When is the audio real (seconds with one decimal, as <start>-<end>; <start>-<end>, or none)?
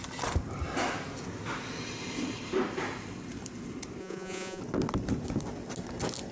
0.0-4.0; 4.6-6.3